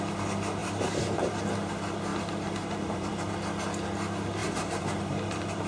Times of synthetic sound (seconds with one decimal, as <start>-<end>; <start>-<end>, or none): 0.6-1.3; 2.1-3.1; 4.4-5.7